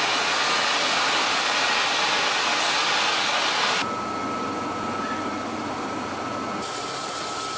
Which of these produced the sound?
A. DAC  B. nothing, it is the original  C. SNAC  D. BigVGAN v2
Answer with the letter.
B